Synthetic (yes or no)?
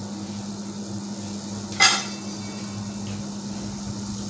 no